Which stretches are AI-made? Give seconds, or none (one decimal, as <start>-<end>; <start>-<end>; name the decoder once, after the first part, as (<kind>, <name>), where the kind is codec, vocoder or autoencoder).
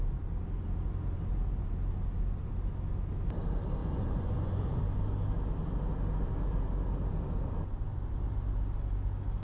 3.8-4.8 (vocoder, Vocos)